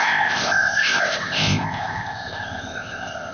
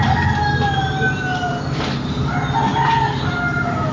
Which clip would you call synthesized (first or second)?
first